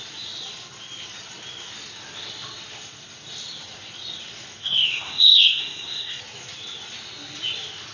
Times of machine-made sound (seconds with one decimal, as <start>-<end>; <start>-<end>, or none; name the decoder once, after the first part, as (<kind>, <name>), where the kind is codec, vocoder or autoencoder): 4.6-6.2 (codec, SNAC)